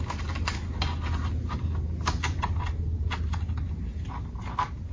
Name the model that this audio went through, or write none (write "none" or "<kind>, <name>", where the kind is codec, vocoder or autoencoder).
none